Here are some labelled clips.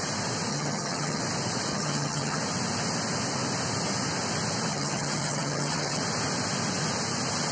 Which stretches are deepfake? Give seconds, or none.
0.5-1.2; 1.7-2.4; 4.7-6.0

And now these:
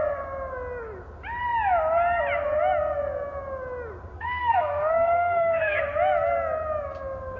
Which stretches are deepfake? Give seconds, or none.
4.1-5.8

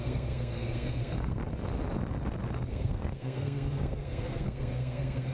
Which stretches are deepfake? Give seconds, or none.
0.0-1.4; 2.7-5.3

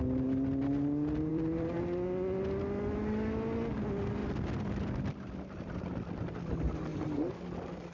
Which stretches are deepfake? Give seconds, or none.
1.3-1.8; 4.2-6.5